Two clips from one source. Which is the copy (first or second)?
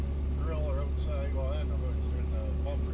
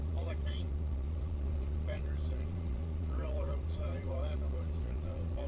second